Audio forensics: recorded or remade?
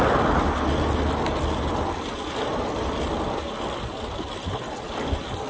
recorded